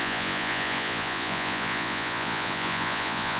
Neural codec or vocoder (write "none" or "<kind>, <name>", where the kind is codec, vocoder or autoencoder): vocoder, Vocos